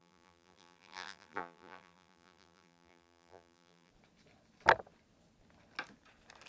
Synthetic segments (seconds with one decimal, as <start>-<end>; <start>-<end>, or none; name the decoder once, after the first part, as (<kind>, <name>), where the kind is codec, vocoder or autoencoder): 0.0-3.9 (vocoder, BigVGAN v2)